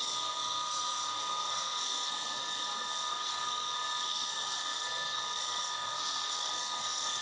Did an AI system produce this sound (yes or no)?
yes